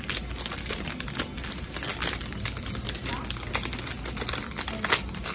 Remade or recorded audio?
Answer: recorded